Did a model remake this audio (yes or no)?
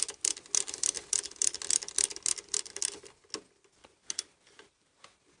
no